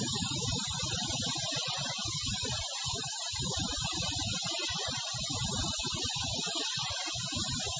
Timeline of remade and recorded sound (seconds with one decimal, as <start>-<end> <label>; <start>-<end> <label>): 0.0-7.8 recorded